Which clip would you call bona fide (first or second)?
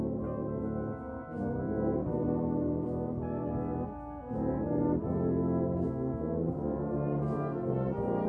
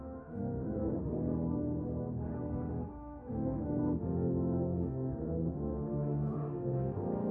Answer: first